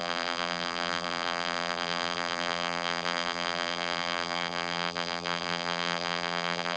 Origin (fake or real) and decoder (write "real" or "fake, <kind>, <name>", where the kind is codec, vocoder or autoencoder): fake, vocoder, BigVGAN v2